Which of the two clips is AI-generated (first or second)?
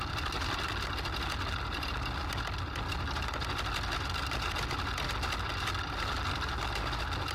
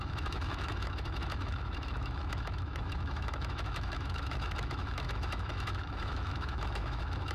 second